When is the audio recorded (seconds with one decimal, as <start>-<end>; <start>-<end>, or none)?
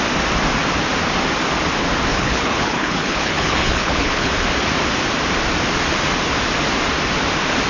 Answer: 0.0-2.1; 4.3-7.7